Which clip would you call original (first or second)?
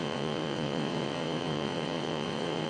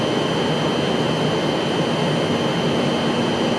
second